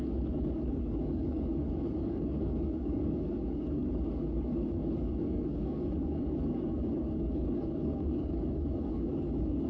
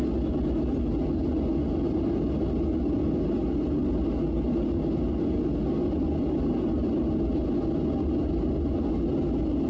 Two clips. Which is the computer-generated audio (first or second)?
first